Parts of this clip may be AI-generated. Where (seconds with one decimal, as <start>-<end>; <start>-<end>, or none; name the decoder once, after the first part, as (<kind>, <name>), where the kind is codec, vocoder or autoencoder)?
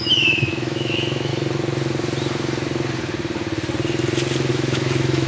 0.0-1.3 (autoencoder, DAC-VAE); 4.5-5.3